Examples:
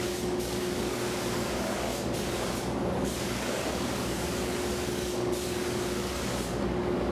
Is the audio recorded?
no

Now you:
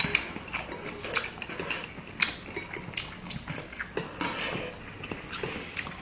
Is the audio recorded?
yes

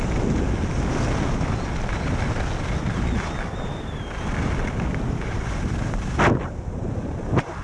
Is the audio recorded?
yes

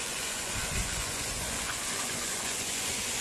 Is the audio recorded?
no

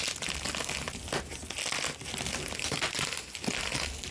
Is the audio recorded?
yes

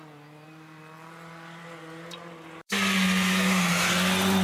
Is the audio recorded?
yes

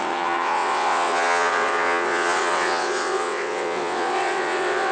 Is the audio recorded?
no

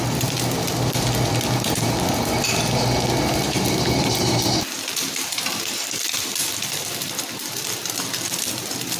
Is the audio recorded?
no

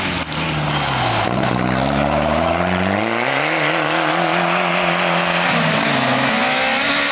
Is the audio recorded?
yes